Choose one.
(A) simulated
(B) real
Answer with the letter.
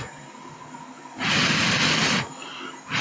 B